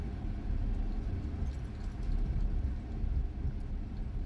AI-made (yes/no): no